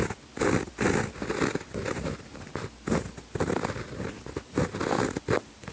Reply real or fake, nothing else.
real